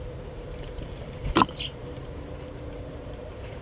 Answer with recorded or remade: remade